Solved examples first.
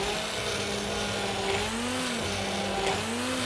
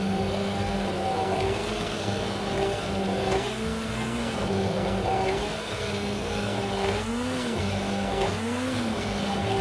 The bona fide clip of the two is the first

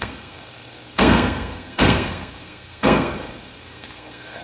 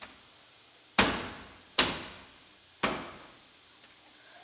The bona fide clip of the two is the second